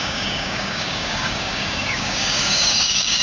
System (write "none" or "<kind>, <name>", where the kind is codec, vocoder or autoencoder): codec, DAC